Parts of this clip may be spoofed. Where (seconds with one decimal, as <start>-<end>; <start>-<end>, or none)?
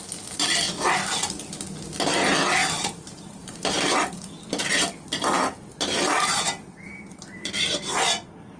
2.6-4.3; 6.9-7.5